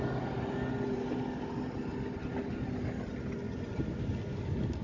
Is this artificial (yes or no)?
no